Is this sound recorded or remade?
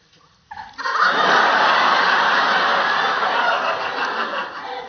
recorded